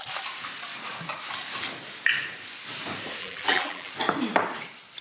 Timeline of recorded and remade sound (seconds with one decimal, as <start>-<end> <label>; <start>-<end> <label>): 0.0-3.2 recorded; 3.2-3.9 remade; 3.9-5.0 recorded